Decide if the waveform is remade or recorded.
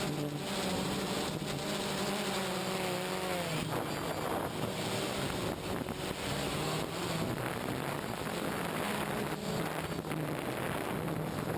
recorded